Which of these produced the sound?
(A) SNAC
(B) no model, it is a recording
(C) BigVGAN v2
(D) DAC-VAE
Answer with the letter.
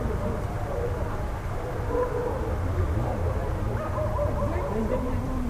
B